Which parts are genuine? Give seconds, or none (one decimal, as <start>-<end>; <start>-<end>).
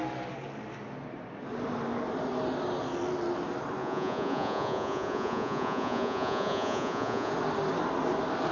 0.0-3.8; 7.3-8.5